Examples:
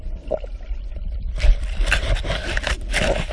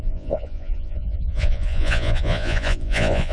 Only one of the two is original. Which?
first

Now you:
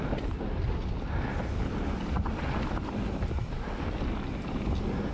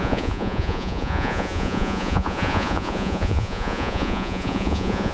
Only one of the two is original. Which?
first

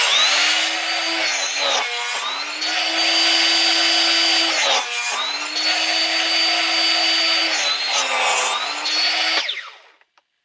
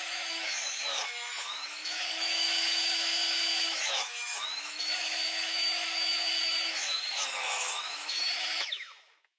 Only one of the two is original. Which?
first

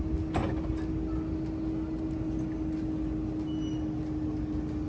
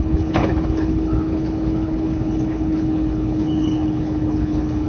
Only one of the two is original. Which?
first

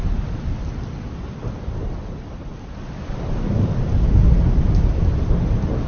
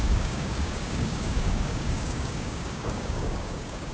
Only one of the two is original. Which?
first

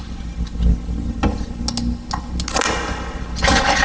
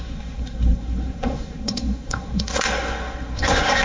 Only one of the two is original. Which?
first